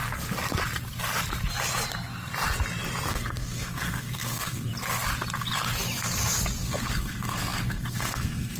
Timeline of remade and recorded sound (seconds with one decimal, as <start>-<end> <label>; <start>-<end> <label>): 0.0-3.1 recorded; 3.1-4.7 remade; 4.7-6.6 recorded; 6.6-8.6 remade